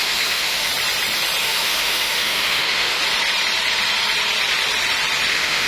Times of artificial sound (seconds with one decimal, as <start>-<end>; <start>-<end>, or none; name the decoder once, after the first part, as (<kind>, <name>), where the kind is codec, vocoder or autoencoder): 0.0-0.7 (autoencoder, DAC-VAE); 1.4-3.0; 5.3-5.7